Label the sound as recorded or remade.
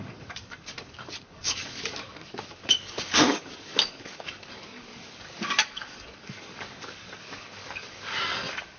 remade